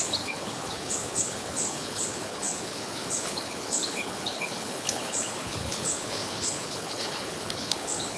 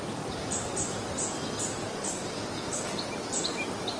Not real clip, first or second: first